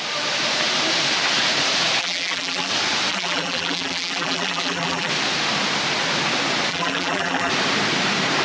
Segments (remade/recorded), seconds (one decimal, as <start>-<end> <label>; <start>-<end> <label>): 0.0-2.0 recorded; 2.0-2.7 remade; 2.7-3.1 recorded; 3.1-5.1 remade; 5.1-6.7 recorded; 6.7-7.5 remade; 7.5-8.4 recorded